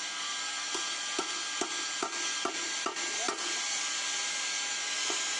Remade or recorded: recorded